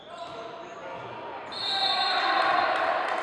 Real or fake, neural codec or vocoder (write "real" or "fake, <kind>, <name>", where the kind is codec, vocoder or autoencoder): real